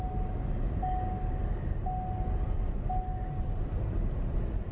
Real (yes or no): yes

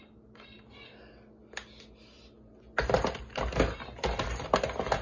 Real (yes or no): yes